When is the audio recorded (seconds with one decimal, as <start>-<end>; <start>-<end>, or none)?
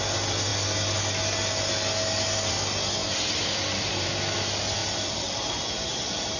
0.0-3.0; 4.1-4.8